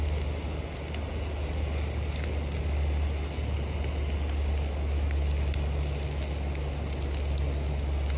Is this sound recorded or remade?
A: recorded